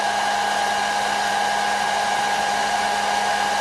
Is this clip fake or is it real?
real